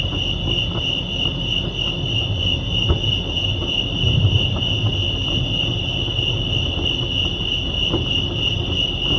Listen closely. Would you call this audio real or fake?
real